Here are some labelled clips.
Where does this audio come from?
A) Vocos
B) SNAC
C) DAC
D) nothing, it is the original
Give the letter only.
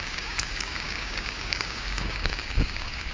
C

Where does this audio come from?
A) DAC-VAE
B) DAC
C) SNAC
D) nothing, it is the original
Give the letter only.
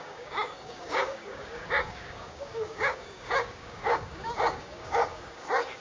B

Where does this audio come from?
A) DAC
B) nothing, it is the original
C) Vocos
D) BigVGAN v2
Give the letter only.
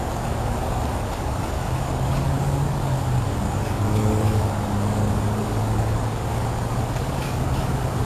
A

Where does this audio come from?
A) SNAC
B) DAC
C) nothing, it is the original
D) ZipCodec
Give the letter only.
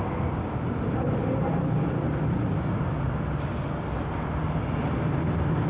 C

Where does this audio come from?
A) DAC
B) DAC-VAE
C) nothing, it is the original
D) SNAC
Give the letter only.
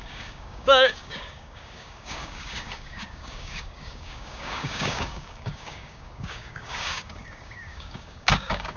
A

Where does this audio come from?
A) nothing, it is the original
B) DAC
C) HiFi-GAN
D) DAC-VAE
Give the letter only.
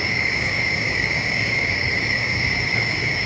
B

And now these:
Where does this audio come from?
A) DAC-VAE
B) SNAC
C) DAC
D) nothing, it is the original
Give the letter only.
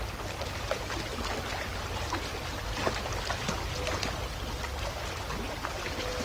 D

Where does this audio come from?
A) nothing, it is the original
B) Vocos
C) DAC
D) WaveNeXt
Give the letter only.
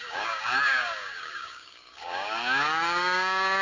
C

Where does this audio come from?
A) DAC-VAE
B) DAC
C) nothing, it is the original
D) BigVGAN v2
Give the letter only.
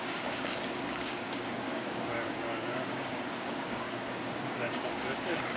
B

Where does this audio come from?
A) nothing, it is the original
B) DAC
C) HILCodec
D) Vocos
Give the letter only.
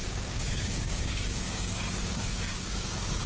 B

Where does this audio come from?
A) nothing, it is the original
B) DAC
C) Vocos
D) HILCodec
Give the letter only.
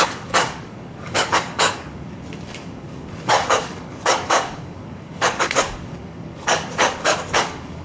B